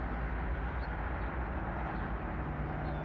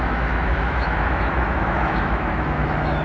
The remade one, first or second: second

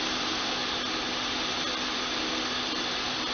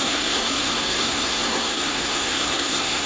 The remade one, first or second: second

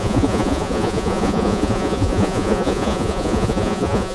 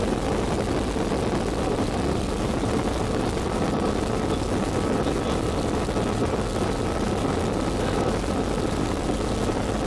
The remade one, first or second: first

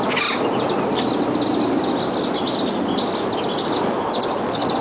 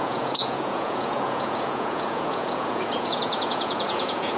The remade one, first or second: second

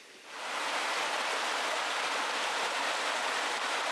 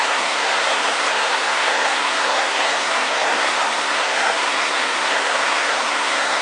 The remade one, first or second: second